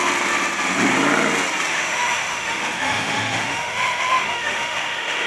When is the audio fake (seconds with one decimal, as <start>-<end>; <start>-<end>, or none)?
1.7-5.3